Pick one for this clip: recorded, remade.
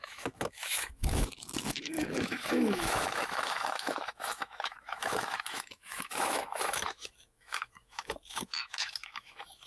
remade